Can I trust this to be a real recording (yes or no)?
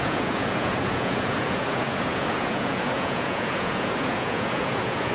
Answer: no